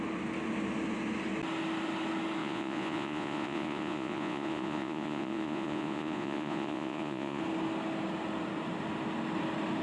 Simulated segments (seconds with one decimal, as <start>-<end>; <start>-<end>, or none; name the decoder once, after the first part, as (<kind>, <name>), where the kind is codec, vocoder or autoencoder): 2.4-7.4 (vocoder, Vocos)